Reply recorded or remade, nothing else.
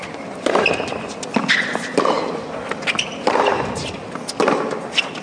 recorded